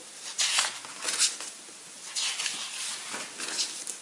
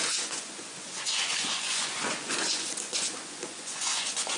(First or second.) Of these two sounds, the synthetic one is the second